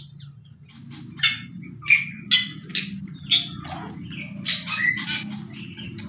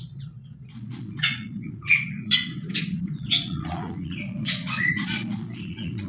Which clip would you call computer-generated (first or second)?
second